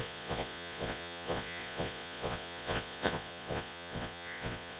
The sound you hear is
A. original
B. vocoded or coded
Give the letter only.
B